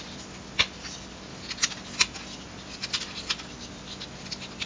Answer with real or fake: real